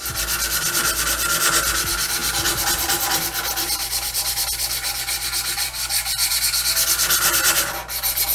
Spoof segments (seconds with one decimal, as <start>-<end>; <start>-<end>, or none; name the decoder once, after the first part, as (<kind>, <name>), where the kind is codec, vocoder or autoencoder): none